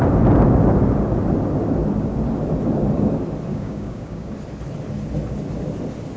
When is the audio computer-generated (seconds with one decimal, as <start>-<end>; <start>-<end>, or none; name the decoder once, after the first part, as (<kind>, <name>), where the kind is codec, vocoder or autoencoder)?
3.5-4.3 (codec, DAC)